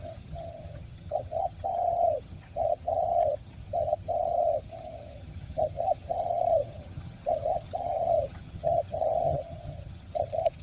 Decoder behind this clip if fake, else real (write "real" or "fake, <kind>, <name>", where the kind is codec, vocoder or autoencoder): fake, vocoder, HiFi-GAN